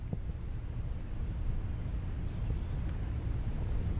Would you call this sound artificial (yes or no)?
no